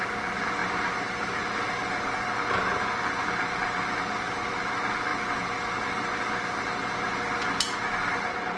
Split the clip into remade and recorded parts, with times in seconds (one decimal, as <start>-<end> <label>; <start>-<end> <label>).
0.0-8.6 recorded